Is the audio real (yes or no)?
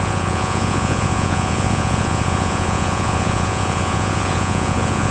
no